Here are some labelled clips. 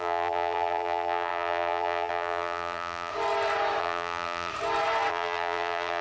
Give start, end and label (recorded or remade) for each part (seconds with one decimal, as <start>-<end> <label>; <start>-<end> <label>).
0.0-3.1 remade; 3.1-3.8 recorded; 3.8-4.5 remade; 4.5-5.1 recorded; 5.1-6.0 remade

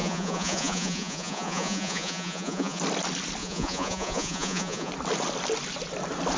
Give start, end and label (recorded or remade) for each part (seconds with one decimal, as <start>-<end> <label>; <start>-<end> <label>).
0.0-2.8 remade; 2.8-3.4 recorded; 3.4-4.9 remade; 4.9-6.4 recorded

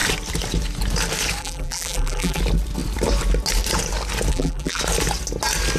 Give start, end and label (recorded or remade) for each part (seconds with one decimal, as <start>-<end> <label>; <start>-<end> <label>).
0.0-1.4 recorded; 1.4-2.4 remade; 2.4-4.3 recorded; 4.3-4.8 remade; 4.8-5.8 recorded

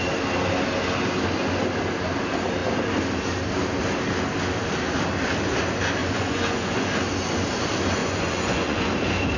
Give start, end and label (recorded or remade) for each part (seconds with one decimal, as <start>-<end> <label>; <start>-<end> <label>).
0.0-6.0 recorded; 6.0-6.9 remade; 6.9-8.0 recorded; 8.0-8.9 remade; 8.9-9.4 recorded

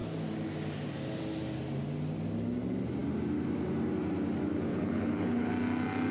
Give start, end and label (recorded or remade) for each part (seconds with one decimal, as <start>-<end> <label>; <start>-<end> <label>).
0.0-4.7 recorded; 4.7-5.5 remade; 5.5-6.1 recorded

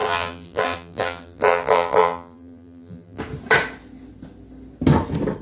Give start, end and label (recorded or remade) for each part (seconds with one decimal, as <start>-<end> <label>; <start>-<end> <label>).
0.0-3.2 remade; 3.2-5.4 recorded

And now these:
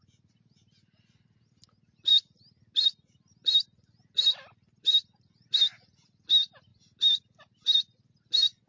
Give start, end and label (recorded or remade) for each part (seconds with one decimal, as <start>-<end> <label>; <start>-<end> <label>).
0.0-8.7 recorded

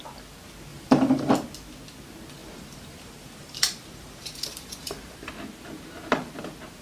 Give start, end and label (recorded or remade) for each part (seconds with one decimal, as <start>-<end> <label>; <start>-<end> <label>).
0.0-0.7 recorded; 0.7-1.3 remade; 1.3-2.4 recorded; 2.4-5.3 remade; 5.3-6.8 recorded